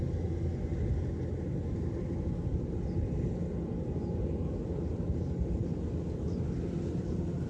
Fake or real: real